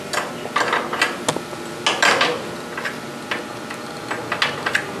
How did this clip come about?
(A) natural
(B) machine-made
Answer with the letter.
A